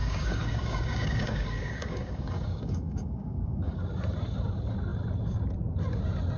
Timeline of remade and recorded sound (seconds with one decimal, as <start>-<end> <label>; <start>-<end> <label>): 0.0-3.8 remade; 3.8-6.4 recorded